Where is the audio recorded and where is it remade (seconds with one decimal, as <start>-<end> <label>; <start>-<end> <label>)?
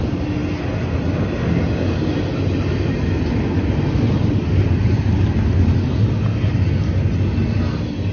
0.0-8.1 recorded